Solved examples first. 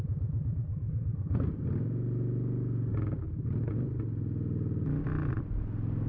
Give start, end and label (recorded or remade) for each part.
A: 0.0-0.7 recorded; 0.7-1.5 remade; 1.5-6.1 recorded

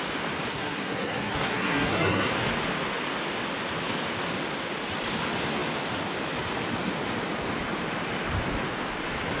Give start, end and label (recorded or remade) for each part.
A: 0.0-0.5 recorded; 0.5-2.3 remade; 2.3-9.4 recorded

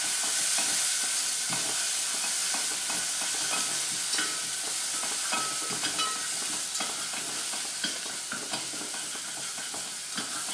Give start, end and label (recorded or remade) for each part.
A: 0.0-10.5 recorded

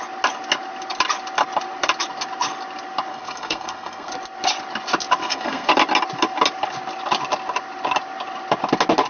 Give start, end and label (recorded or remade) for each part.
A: 0.0-3.1 recorded; 3.1-4.1 remade; 4.1-5.2 recorded; 5.2-5.7 remade; 5.7-9.1 recorded